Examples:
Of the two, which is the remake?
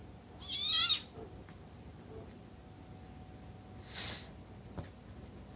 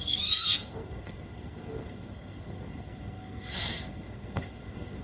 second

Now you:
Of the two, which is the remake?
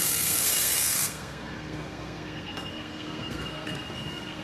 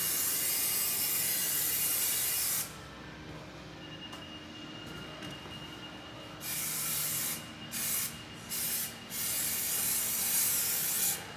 first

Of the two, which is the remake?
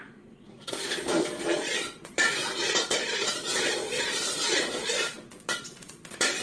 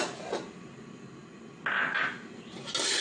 first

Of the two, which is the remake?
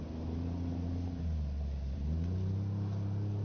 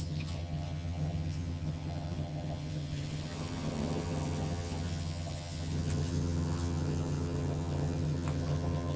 second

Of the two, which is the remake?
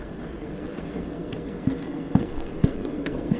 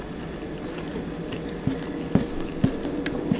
first